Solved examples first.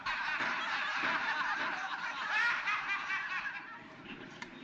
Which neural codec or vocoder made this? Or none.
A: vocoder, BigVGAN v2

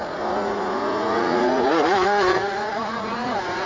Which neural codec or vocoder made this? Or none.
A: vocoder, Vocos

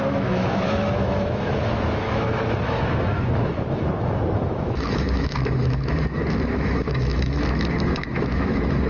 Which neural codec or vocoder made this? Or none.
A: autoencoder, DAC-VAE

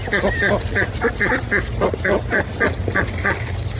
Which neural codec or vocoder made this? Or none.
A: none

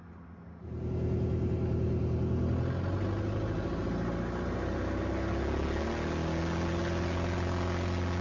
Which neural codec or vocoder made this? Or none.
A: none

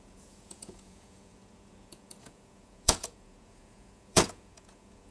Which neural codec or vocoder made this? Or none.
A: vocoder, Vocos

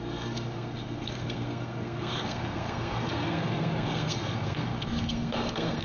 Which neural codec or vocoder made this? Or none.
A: codec, SNAC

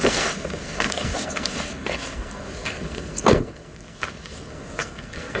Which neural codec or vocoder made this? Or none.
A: codec, SNAC